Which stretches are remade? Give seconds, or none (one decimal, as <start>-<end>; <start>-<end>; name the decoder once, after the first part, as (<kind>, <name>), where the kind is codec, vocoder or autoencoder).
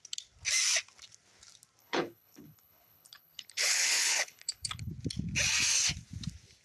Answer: 1.8-4.9 (codec, HILCodec)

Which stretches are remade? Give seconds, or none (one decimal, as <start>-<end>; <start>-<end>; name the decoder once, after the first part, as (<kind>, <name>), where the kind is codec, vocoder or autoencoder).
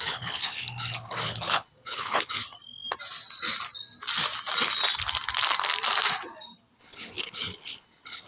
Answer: 0.0-2.4 (codec, HILCodec); 6.8-8.3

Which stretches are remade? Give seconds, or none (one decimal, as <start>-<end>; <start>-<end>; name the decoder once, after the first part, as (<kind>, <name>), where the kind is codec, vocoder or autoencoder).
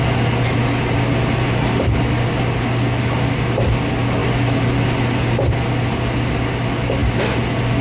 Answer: none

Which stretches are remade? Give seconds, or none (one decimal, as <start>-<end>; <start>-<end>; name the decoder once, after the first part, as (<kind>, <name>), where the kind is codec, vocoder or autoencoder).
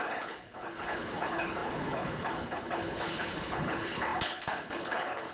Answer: 0.0-5.3 (codec, HILCodec)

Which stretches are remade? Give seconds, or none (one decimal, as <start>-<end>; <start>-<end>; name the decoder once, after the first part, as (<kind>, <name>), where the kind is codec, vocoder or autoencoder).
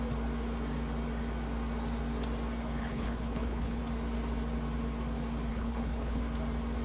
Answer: 2.8-3.8 (codec, HILCodec); 5.5-6.2